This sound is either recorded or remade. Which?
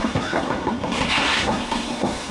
remade